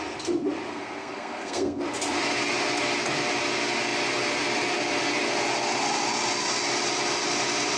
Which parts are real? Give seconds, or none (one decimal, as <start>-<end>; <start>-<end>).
0.0-0.7; 1.8-7.8